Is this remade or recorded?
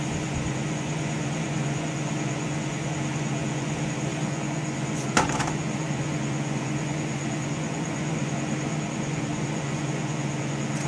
remade